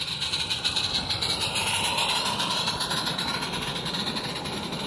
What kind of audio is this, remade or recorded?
remade